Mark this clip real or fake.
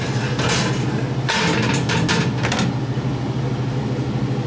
real